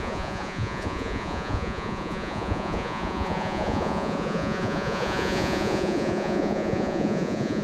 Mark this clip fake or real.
fake